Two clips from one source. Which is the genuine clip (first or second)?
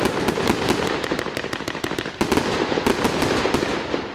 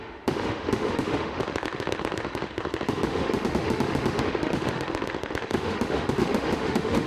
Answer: first